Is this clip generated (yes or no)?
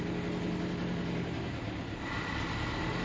no